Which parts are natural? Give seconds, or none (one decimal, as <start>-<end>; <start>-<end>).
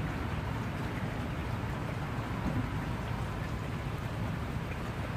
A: 0.0-5.2